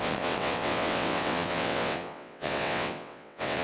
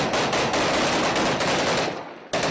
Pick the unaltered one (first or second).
second